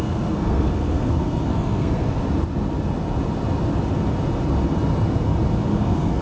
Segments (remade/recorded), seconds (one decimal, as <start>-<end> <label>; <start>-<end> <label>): 0.0-2.2 remade; 2.2-5.8 recorded; 5.8-6.2 remade